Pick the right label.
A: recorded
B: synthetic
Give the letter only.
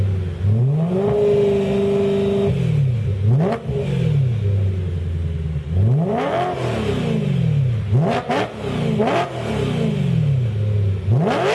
A